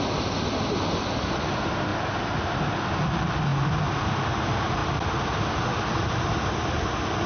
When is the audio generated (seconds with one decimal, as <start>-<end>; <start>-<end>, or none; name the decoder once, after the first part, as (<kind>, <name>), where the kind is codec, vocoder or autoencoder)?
none